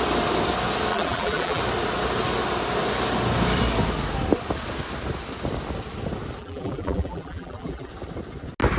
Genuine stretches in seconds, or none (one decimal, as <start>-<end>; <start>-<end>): 0.0-0.9; 1.6-6.4; 7.9-8.8